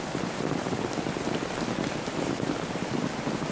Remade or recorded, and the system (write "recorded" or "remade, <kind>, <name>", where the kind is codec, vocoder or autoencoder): recorded